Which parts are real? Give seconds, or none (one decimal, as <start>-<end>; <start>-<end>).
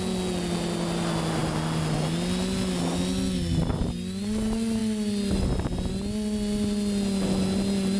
0.0-8.0